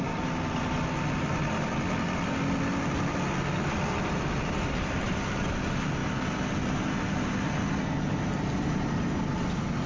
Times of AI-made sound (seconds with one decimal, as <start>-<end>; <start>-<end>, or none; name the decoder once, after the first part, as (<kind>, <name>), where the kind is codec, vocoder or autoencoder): none